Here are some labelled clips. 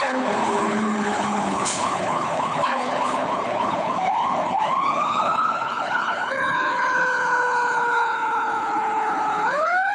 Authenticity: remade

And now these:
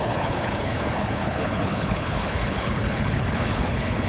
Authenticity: remade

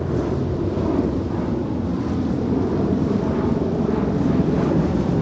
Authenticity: recorded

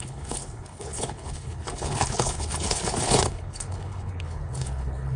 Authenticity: remade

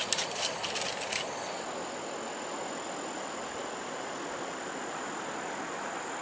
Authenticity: recorded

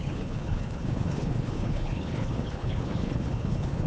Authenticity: remade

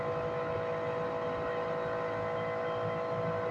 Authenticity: recorded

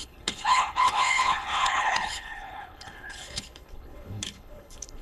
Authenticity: remade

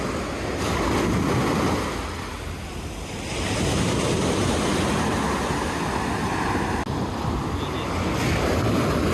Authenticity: recorded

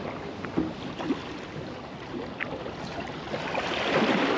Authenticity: recorded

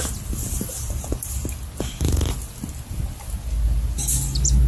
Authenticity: recorded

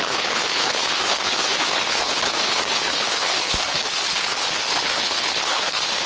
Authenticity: remade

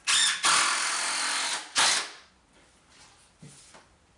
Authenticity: recorded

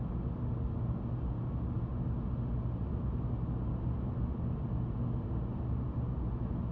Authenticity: recorded